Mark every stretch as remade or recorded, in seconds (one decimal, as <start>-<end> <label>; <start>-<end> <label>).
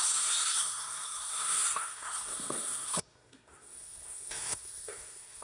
0.0-5.4 remade